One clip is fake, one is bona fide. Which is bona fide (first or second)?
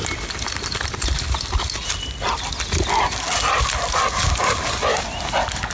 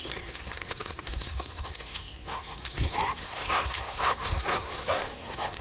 first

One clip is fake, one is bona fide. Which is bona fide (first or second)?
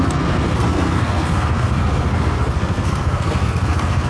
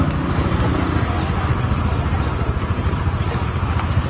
second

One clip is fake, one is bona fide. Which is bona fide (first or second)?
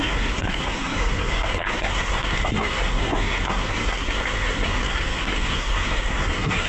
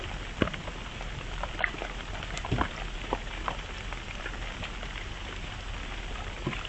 second